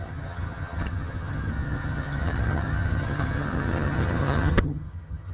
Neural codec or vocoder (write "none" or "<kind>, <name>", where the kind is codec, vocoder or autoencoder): vocoder, HiFi-GAN